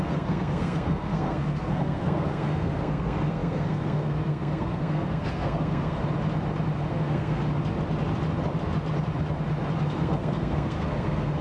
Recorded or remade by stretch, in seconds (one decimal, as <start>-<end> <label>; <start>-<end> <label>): 0.0-6.0 remade; 6.0-6.9 recorded; 6.9-7.4 remade; 7.4-9.8 recorded; 9.8-11.4 remade